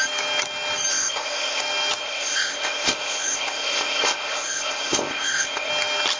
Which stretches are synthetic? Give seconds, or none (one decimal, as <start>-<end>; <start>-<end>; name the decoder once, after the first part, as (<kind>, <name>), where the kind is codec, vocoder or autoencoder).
0.9-1.6 (codec, ZipCodec); 2.0-5.7